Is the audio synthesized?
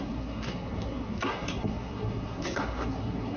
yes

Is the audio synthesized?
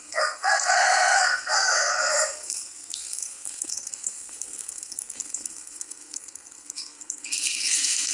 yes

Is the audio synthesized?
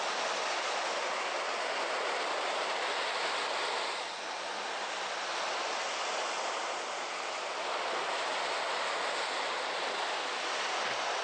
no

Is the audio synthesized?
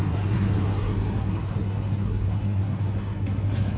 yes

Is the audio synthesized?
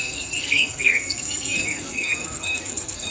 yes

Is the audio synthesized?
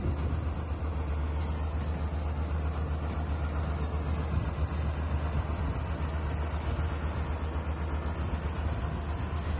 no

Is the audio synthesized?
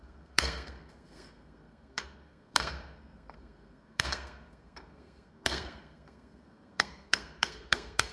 yes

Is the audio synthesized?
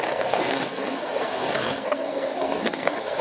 yes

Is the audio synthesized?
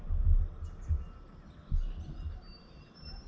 no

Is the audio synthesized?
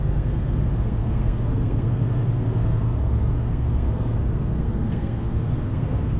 yes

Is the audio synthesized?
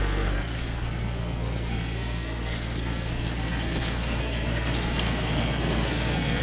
yes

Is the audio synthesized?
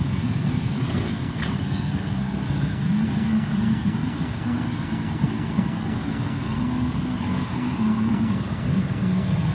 yes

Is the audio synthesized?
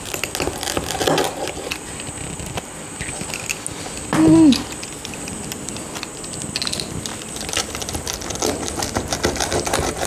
no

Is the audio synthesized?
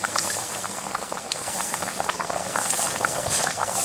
yes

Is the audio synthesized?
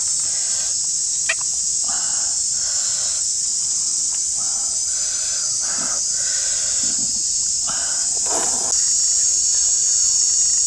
no